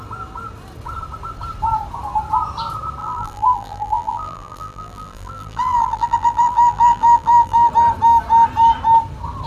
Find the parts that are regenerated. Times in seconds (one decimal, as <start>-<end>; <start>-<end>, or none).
3.0-7.7